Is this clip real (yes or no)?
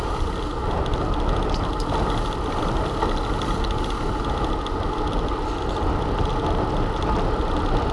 yes